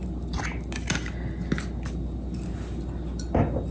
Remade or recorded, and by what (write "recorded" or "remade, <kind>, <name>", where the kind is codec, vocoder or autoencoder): recorded